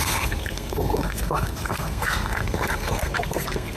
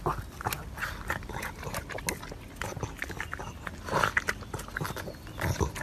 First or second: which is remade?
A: first